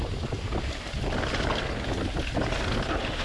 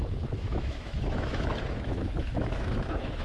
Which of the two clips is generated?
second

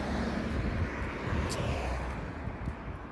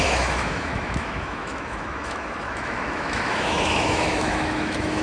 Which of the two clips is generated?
second